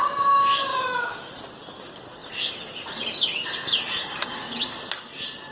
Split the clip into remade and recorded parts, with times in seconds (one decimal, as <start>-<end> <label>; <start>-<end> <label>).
0.0-0.7 recorded; 0.7-1.4 remade; 1.4-5.5 recorded